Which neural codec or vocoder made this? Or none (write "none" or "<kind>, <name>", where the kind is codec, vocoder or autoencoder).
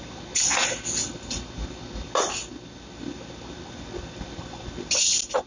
none